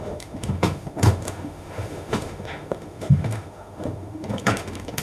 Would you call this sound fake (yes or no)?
yes